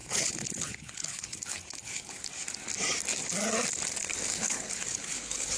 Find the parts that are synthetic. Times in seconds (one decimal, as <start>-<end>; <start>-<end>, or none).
0.0-2.3; 4.3-5.6